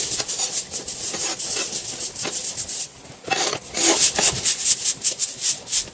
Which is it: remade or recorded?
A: recorded